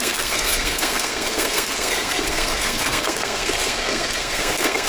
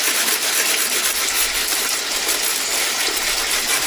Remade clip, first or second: first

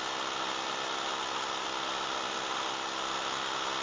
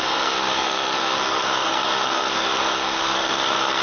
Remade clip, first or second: second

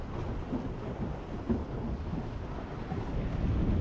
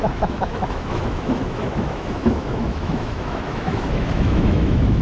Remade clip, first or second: second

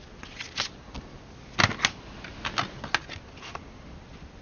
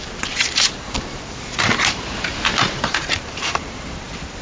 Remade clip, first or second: second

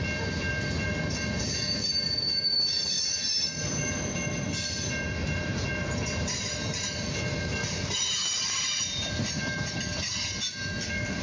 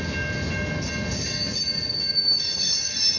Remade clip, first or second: first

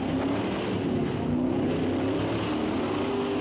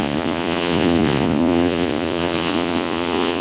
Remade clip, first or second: second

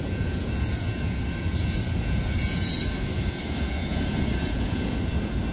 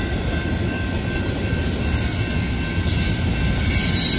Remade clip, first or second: first